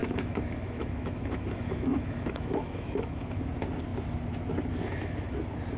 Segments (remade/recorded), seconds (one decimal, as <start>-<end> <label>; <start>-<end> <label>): 0.0-3.5 remade; 3.5-5.8 recorded